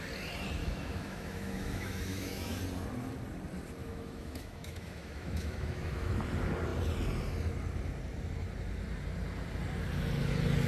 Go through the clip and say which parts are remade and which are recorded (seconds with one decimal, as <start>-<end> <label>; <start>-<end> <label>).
0.0-0.6 recorded; 0.6-2.6 remade; 2.6-3.8 recorded; 3.8-6.2 remade; 6.2-10.7 recorded

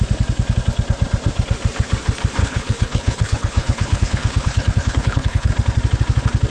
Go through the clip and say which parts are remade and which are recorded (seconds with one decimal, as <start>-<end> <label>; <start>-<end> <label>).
0.0-2.4 recorded; 2.4-5.5 remade; 5.5-6.5 recorded

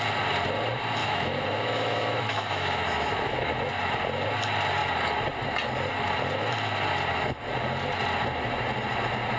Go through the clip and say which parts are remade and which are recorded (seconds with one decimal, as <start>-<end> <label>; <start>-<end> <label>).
0.0-1.0 recorded; 1.0-3.6 remade; 3.6-9.4 recorded

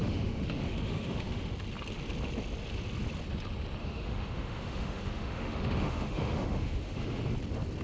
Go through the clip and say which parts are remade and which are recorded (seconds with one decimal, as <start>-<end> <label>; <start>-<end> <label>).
0.0-1.5 remade; 1.5-3.8 recorded; 3.8-7.2 remade; 7.2-7.8 recorded